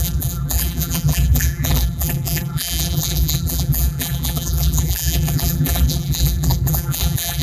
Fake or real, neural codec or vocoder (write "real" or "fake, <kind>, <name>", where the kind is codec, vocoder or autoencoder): fake, vocoder, BigVGAN v2